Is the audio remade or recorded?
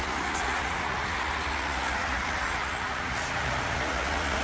remade